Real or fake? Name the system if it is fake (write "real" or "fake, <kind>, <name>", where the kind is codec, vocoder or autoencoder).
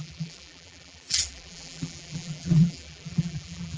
fake, vocoder, BigVGAN v2